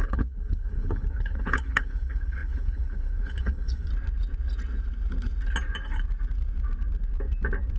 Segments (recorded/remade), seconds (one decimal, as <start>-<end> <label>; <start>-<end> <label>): 0.0-3.9 remade; 3.9-7.8 recorded